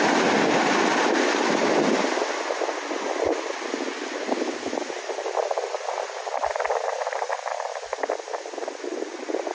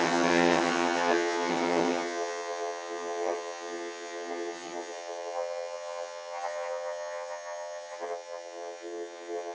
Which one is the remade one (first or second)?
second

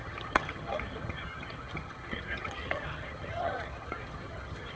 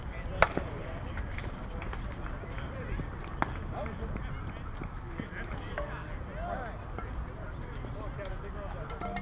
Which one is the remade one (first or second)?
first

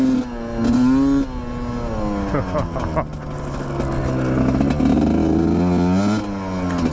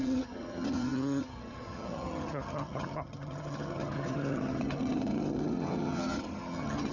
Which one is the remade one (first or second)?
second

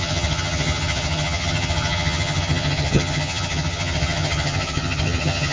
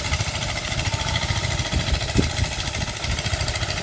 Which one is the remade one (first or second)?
first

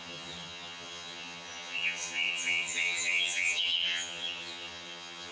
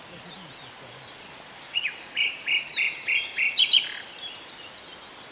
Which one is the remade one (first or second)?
first